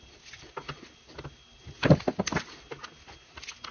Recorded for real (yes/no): yes